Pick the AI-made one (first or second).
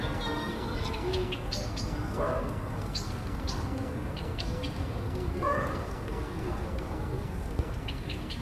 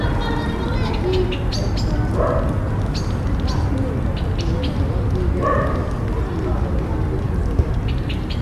first